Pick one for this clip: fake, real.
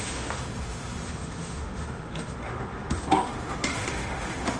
fake